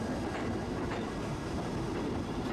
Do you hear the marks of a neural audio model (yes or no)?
no